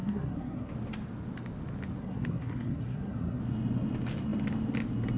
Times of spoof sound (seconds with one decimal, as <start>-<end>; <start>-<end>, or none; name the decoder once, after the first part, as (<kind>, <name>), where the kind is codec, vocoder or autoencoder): 0.0-0.7 (codec, SNAC); 2.0-3.4